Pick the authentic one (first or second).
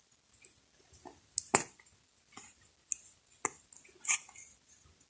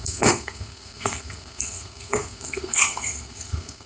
first